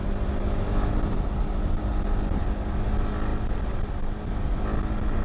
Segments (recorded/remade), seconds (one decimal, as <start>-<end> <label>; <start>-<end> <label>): 0.0-5.2 recorded

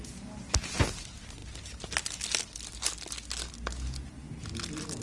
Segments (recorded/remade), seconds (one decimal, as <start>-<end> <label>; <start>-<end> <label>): 0.0-5.0 recorded

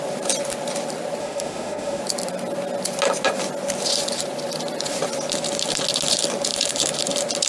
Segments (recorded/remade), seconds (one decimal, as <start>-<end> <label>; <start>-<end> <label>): 0.0-1.2 recorded; 1.2-2.0 remade; 2.0-7.5 recorded

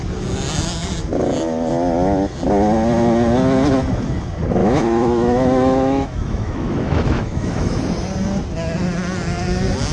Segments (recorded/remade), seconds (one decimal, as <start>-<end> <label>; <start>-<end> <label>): 0.0-4.6 recorded; 4.6-7.8 remade; 7.8-9.9 recorded

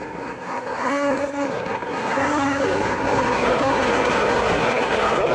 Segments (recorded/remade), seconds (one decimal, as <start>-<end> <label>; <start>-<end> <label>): 0.0-5.3 remade

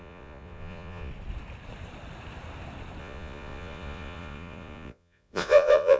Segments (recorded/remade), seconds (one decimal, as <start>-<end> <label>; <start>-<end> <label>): 0.0-1.1 remade; 1.1-3.0 recorded; 3.0-6.0 remade

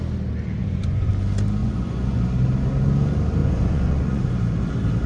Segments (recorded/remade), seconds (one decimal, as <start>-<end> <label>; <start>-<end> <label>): 0.0-0.6 recorded; 0.6-1.1 remade; 1.1-1.6 recorded; 1.6-2.2 remade; 2.2-3.4 recorded; 3.4-4.2 remade; 4.2-5.1 recorded